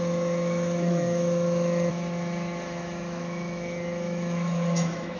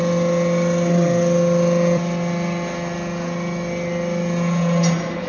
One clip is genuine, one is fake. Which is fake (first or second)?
first